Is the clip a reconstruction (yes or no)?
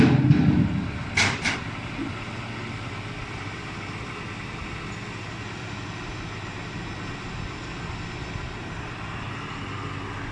no